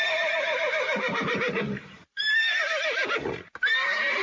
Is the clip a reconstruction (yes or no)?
yes